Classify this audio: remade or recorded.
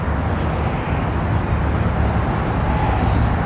recorded